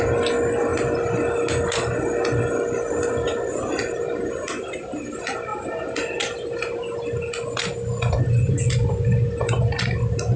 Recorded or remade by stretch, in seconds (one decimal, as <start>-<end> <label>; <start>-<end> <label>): 0.0-10.4 recorded